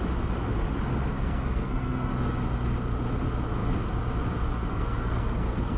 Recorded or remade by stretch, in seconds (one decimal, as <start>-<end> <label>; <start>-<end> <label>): 0.0-1.1 recorded; 1.1-2.1 remade; 2.1-4.7 recorded; 4.7-5.8 remade